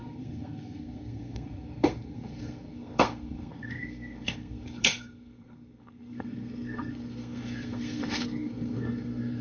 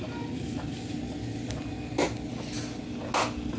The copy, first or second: first